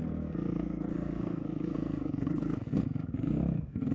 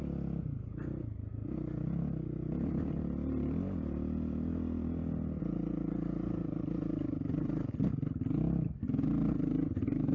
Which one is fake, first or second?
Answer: first